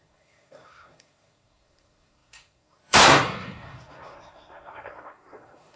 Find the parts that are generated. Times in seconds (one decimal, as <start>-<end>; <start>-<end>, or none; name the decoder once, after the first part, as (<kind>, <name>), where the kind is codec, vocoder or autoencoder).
0.0-5.8 (codec, SNAC)